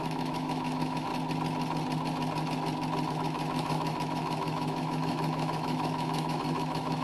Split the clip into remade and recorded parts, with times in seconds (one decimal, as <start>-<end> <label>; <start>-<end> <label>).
0.0-1.1 remade; 1.1-3.1 recorded; 3.1-7.0 remade

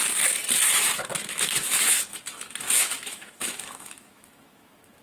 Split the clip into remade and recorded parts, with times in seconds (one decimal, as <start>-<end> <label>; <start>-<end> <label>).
0.0-0.7 recorded; 0.7-5.0 remade

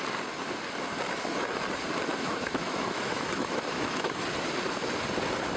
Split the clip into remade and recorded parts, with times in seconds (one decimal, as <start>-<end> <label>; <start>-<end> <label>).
0.0-2.1 recorded; 2.1-4.2 remade; 4.2-5.6 recorded

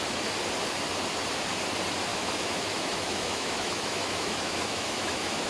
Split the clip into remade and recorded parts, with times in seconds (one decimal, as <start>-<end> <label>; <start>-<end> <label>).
0.0-2.1 recorded; 2.1-5.5 remade

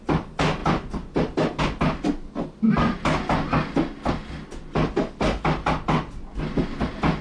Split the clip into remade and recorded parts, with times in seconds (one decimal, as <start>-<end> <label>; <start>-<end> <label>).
0.0-7.2 recorded

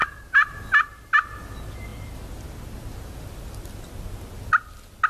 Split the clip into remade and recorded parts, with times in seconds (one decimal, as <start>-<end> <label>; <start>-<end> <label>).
0.0-5.1 recorded

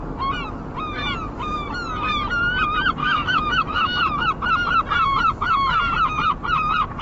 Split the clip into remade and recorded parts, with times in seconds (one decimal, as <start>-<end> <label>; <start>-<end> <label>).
0.0-3.0 recorded; 3.0-4.0 remade; 4.0-7.0 recorded

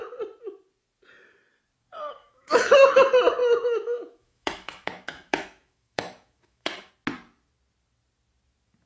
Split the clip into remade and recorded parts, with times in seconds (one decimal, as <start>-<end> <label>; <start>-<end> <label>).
0.0-2.2 recorded; 2.2-2.9 remade; 2.9-3.4 recorded; 3.4-6.9 remade; 6.9-8.9 recorded